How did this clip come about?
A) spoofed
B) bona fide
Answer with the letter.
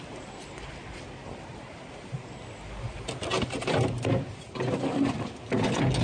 B